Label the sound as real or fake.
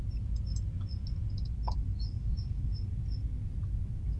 real